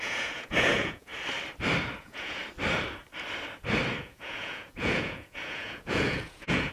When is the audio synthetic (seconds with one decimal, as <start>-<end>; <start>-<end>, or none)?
0.0-1.1; 2.0-2.4; 4.0-6.7